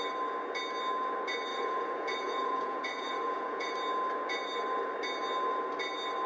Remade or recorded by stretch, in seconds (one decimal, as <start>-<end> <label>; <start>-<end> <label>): 0.0-1.5 recorded; 1.5-3.7 remade; 3.7-6.3 recorded